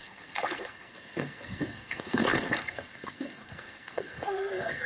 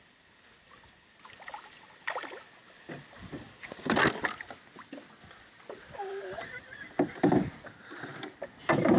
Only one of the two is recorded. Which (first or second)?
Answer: second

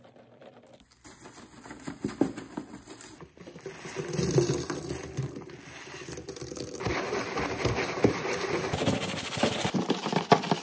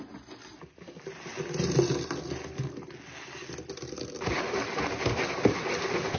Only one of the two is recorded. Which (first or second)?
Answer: second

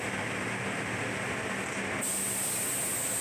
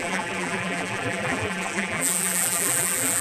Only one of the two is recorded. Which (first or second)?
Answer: first